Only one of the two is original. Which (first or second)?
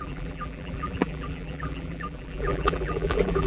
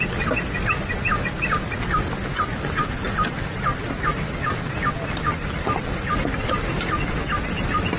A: second